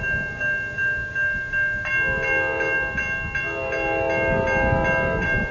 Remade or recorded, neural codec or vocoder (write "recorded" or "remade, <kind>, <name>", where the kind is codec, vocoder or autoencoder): recorded